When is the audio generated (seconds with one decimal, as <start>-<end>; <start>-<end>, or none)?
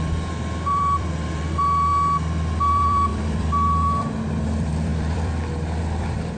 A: 0.0-1.9; 2.7-6.4